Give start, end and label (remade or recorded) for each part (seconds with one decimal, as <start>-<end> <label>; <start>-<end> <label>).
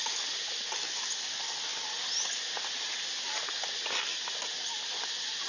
0.0-5.5 recorded